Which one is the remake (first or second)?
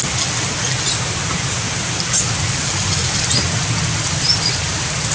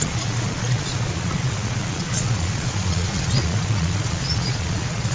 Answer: second